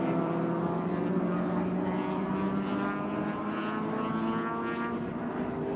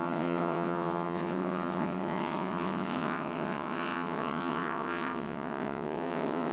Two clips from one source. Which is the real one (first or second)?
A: first